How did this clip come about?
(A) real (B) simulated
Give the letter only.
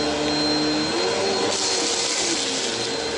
A